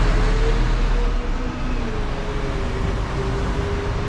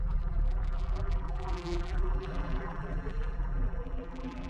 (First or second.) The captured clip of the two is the first